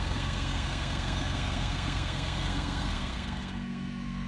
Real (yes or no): no